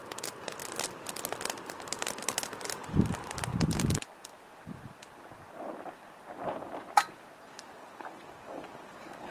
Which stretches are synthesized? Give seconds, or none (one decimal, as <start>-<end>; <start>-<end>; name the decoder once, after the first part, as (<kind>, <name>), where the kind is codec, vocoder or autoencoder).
none